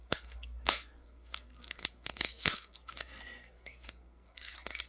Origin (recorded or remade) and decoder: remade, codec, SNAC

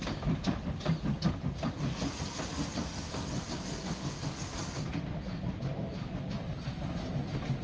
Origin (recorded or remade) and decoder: recorded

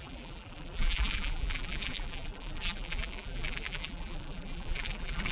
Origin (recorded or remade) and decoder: remade, vocoder, BigVGAN v2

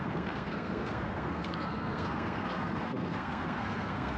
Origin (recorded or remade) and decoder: remade, codec, SNAC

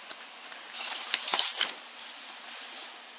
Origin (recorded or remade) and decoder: recorded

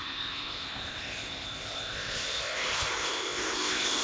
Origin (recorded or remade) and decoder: remade, codec, ZipCodec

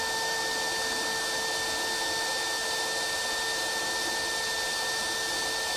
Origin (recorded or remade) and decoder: recorded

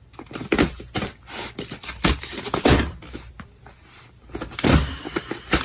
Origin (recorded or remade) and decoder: recorded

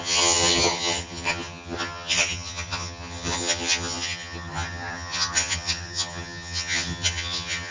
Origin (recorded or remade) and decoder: remade, vocoder, HiFi-GAN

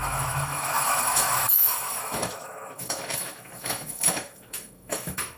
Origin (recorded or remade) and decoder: remade, autoencoder, DAC-VAE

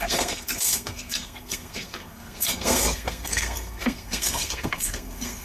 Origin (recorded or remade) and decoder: remade, codec, SNAC